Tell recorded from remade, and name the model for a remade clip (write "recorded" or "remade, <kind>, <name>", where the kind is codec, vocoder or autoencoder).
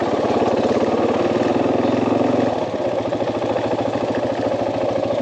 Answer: recorded